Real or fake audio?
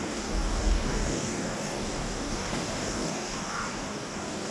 fake